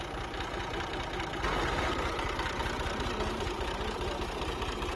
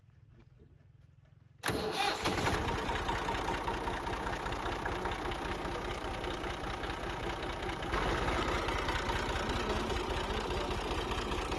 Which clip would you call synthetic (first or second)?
first